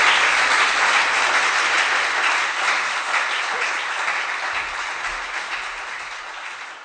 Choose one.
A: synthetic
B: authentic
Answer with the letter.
B